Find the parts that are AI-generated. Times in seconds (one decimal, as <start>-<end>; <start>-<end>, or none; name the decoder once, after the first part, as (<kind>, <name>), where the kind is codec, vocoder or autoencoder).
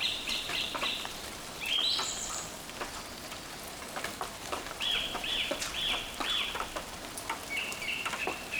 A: 0.0-1.9 (vocoder, BigVGAN v2); 3.7-5.7; 7.5-8.6